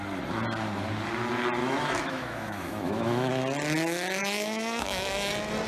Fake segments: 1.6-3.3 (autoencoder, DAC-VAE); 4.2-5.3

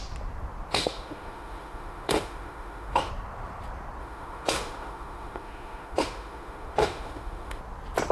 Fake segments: 0.7-3.1 (autoencoder, DAC-VAE); 4.0-7.6